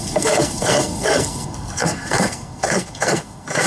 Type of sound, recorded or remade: remade